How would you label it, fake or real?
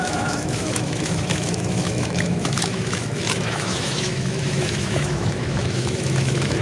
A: fake